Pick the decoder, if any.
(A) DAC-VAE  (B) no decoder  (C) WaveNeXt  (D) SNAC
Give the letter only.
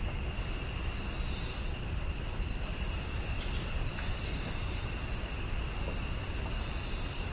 B